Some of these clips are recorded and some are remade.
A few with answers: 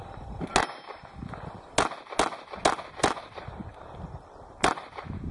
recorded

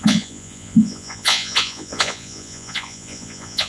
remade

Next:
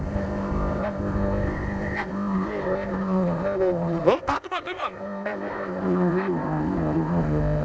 remade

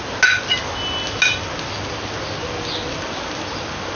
recorded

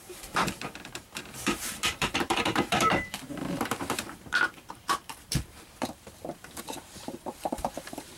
remade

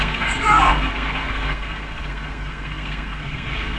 remade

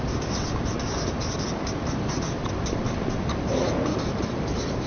recorded